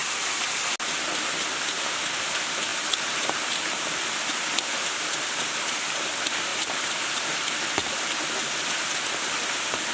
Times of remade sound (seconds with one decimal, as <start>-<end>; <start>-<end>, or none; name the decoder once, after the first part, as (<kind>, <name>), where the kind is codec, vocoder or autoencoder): 2.7-4.1 (vocoder, BigVGAN v2); 6.5-7.1